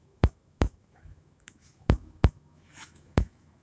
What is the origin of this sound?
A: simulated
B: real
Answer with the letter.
A